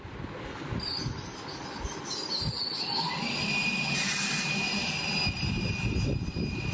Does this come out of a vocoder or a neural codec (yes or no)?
no